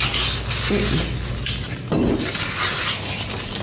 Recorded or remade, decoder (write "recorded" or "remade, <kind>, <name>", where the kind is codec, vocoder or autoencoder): recorded